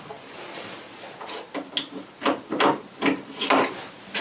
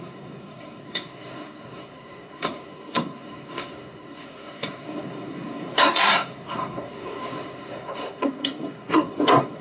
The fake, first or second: second